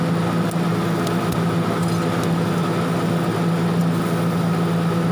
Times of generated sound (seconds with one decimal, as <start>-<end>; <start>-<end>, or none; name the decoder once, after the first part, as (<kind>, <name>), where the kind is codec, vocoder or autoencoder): none